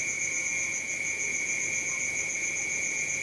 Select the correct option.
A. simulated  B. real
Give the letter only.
A